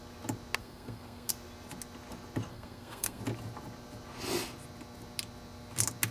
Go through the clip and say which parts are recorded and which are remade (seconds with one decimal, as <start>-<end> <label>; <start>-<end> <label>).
0.0-0.6 recorded; 0.6-1.3 remade; 1.3-2.5 recorded; 2.5-3.2 remade; 3.2-6.1 recorded